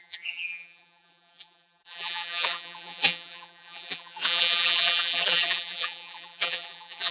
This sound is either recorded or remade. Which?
remade